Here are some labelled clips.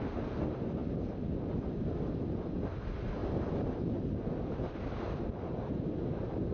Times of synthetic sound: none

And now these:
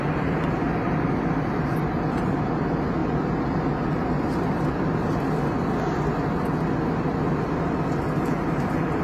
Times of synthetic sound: none

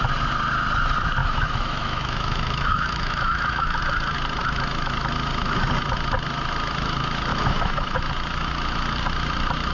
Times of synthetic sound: 1.2-3.8 (autoencoder, DAC-VAE); 7.3-8.0

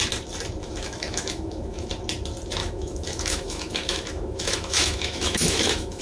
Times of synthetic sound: 0.6-1.9 (autoencoder, DAC-VAE); 2.6-6.0

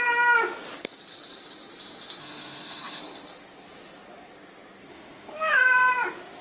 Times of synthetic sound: 2.2-3.0 (autoencoder, DAC-VAE); 4.9-5.6

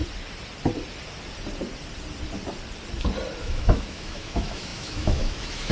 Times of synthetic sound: 3.4-5.7 (autoencoder, DAC-VAE)

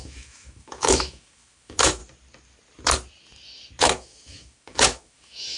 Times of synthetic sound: 0.0-2.0 (autoencoder, DAC-VAE); 3.8-5.6